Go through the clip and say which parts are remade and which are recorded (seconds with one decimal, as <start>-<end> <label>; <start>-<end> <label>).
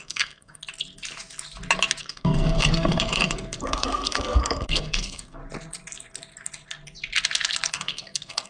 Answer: 0.0-0.6 remade; 0.6-2.0 recorded; 2.0-5.4 remade; 5.4-7.7 recorded; 7.7-8.5 remade